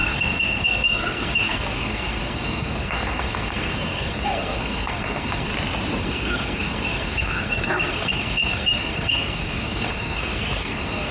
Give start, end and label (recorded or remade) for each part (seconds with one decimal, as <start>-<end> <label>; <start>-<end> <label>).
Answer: 0.0-5.5 remade; 5.5-6.0 recorded; 6.0-11.1 remade